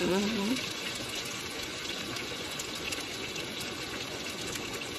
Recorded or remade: remade